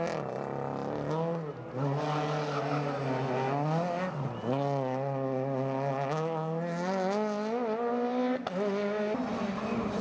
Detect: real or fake real